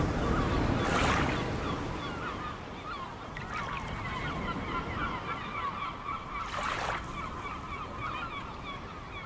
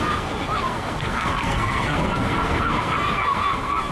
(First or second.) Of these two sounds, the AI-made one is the second